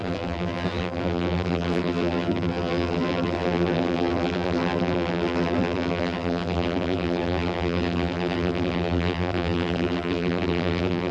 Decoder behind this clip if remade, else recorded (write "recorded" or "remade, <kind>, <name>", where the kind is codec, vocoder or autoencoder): remade, vocoder, BigVGAN v2